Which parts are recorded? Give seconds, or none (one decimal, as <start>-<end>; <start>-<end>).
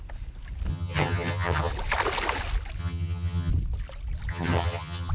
0.0-0.7; 1.7-2.8; 3.5-4.3